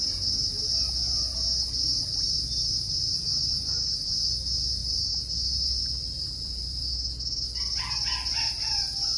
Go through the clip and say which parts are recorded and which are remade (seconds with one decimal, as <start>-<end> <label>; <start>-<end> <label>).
0.0-4.8 recorded; 4.8-6.8 remade; 6.8-9.2 recorded